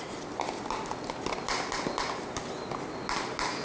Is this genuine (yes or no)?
yes